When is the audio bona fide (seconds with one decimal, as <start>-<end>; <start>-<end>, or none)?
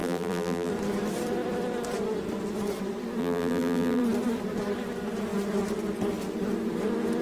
0.7-3.2; 4.0-7.2